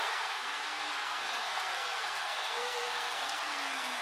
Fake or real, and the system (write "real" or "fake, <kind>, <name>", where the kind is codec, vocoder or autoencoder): fake, codec, SNAC